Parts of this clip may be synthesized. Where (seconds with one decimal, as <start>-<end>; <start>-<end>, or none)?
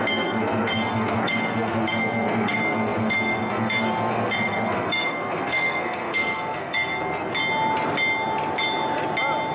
0.0-7.3